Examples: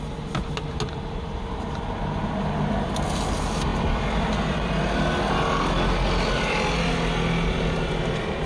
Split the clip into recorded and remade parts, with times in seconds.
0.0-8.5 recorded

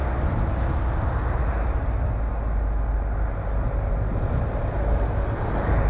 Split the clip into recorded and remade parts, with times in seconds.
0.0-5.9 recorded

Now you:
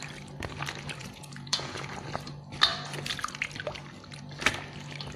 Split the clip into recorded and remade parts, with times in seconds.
0.0-1.0 recorded; 1.0-1.8 remade; 1.8-5.2 recorded